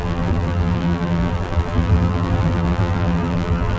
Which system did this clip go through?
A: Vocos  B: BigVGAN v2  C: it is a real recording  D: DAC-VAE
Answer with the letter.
B